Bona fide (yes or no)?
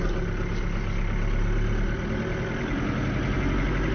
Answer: yes